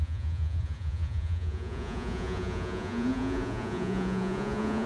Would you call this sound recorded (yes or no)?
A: no